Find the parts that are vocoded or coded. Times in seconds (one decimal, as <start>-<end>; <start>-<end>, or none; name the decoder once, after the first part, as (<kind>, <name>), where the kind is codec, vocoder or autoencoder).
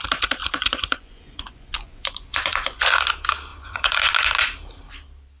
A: 0.4-3.0 (vocoder, Vocos); 3.5-4.1